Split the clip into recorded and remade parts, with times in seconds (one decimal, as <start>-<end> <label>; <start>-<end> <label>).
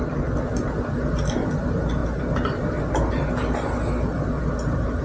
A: 0.0-5.0 recorded